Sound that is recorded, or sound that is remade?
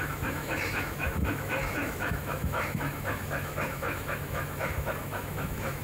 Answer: remade